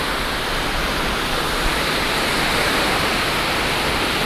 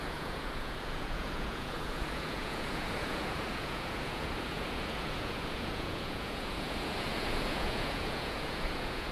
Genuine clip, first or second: first